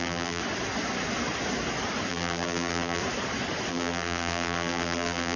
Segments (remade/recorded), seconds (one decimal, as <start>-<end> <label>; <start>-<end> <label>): 0.0-0.4 remade; 0.4-2.1 recorded; 2.1-3.0 remade; 3.0-3.7 recorded; 3.7-5.4 remade